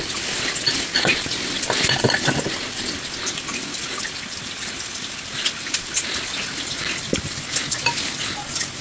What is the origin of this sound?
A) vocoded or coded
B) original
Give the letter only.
B